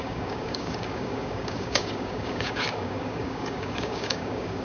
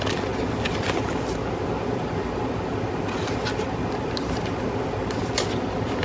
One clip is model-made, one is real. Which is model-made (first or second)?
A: first